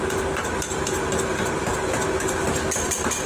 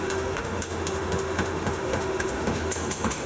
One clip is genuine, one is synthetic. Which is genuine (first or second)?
first